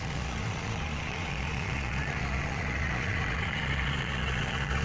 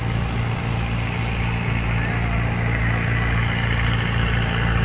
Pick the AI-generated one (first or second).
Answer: first